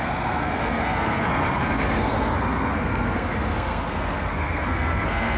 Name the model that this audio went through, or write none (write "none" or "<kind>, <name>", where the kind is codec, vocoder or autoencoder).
codec, SNAC